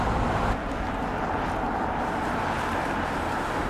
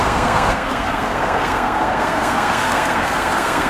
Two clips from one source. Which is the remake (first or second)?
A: second